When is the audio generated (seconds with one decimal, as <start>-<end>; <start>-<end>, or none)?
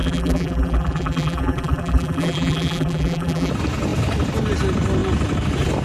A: 0.0-3.5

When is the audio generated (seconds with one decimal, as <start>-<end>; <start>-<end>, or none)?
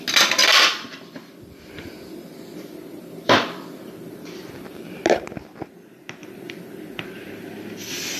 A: 0.4-5.0; 6.2-8.2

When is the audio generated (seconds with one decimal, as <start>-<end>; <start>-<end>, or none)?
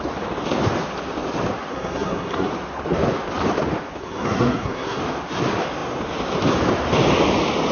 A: 1.7-2.5; 4.0-5.0